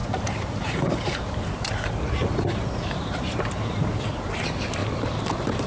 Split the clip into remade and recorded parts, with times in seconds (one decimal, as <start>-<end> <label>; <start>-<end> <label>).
0.0-1.3 remade; 1.3-2.2 recorded; 2.2-3.9 remade; 3.9-4.8 recorded; 4.8-5.7 remade